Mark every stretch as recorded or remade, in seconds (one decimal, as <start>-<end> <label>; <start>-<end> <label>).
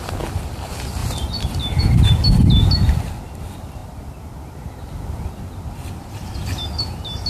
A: 0.0-3.8 recorded; 3.8-5.7 remade; 5.7-7.3 recorded